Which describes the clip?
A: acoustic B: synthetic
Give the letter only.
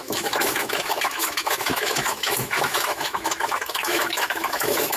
B